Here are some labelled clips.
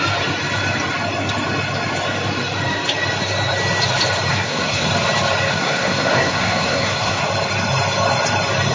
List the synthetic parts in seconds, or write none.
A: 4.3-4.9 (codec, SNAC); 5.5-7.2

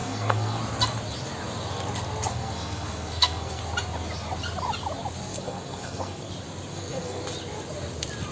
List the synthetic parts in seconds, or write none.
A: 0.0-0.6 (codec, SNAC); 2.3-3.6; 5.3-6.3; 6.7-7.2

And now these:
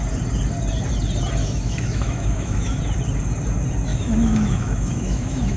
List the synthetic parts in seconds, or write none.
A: 1.4-2.8 (autoencoder, DAC-VAE); 3.9-5.6

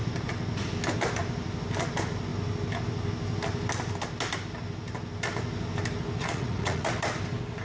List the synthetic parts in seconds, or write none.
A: 6.2-6.9 (vocoder, Vocos)

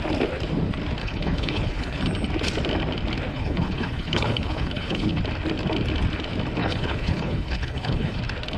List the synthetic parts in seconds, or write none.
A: 1.0-2.0 (codec, HILCodec); 3.3-5.2; 6.6-8.2

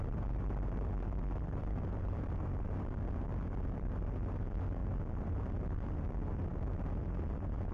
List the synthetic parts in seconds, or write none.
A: 0.0-7.7 (vocoder, BigVGAN v2)

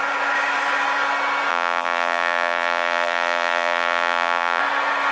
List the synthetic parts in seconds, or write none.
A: 1.5-4.6 (vocoder, BigVGAN v2)

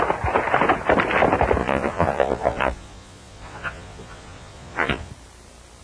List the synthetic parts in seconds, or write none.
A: 1.6-5.1 (vocoder, Vocos)